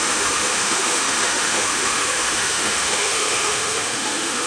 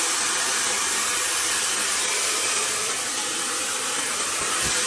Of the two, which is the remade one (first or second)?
first